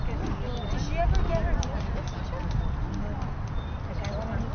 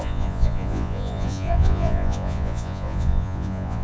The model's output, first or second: second